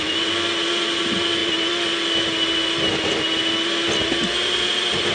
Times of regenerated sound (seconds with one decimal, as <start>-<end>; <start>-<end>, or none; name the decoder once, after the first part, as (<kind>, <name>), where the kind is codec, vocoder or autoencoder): none